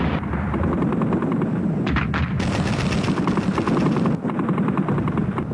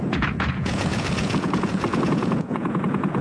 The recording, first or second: first